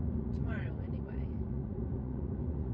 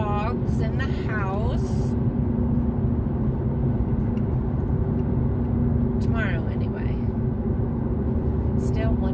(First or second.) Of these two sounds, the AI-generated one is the first